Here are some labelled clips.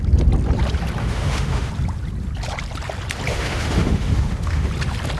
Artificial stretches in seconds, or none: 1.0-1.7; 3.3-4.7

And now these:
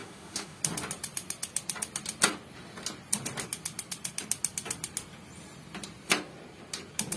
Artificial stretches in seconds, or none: 0.0-0.6

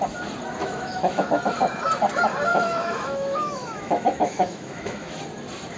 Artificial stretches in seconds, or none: 0.6-1.4; 2.5-5.2

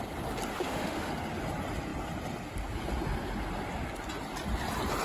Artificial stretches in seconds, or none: 0.5-1.1

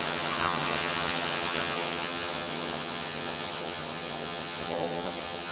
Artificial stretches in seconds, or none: 0.0-5.5

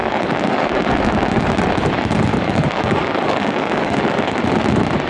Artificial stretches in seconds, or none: 0.0-1.6; 2.3-4.4